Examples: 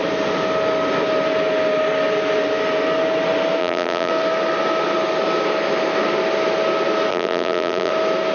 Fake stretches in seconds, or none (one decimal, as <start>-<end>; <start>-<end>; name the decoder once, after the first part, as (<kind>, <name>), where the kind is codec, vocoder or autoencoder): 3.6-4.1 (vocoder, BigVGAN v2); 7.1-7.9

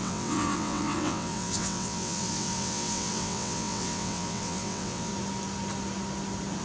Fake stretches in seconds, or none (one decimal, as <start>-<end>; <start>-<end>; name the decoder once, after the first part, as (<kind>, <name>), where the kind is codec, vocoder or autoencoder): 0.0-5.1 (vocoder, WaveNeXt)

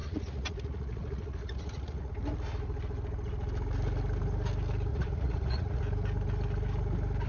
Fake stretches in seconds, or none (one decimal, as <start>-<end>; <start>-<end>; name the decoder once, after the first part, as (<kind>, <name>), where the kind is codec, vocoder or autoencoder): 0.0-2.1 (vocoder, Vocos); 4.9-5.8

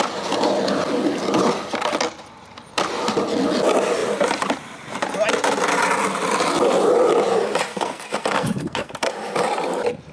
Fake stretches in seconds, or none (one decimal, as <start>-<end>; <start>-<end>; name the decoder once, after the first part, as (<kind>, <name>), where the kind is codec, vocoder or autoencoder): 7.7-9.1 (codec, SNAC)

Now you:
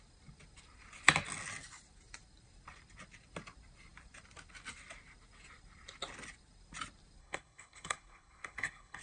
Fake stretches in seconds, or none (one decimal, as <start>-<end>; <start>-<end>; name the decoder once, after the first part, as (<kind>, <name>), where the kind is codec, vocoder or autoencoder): 7.2-9.0 (codec, HILCodec)